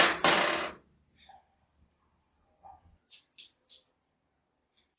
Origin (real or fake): real